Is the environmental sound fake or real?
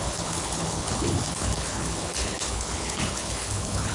fake